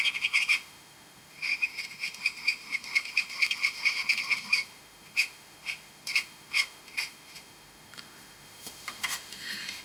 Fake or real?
fake